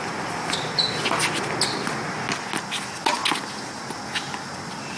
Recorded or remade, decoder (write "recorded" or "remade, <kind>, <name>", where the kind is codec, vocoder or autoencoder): recorded